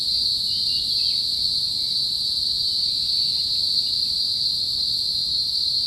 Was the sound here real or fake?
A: real